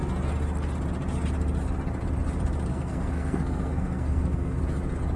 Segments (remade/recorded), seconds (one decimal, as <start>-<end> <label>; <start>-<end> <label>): 0.0-2.7 recorded; 2.7-4.6 remade; 4.6-5.2 recorded